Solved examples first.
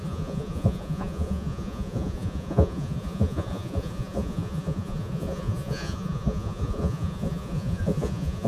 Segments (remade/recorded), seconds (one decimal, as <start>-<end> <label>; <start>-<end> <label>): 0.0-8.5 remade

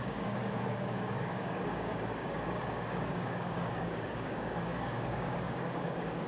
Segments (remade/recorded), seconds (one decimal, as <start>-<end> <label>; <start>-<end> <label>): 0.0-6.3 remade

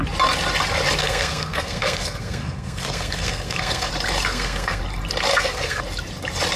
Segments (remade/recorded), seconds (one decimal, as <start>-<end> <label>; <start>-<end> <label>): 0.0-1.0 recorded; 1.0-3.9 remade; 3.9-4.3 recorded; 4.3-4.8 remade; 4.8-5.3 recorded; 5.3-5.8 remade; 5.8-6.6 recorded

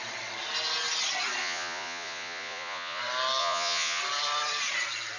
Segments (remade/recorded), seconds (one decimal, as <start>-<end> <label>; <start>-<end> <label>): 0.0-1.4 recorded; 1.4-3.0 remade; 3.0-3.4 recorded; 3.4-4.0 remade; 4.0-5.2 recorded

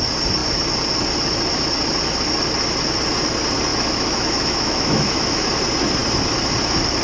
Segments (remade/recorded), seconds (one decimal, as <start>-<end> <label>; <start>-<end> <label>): 0.0-3.7 recorded; 3.7-5.5 remade; 5.5-7.0 recorded

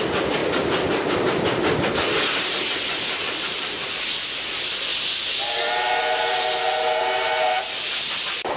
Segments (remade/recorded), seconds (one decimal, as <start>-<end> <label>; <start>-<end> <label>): 0.0-8.6 recorded

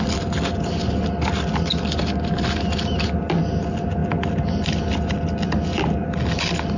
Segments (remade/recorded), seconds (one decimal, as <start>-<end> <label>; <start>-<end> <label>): 0.0-6.8 recorded

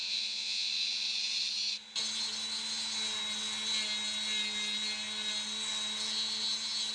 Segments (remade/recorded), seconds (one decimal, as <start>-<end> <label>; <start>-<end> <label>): 0.0-0.7 remade; 0.7-6.9 recorded